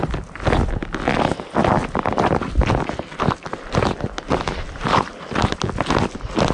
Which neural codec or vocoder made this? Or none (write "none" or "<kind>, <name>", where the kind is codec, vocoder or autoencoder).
none